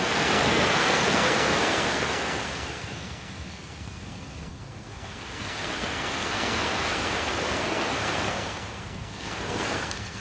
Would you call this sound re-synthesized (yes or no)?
yes